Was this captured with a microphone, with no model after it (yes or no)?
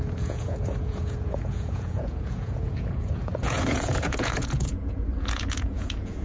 no